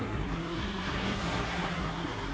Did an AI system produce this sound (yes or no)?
yes